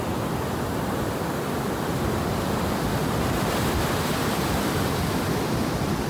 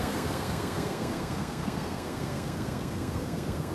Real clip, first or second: first